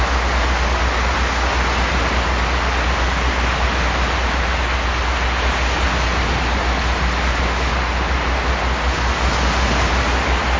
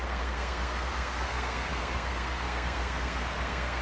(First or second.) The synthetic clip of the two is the second